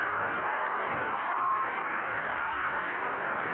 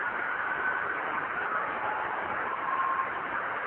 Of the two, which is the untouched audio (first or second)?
second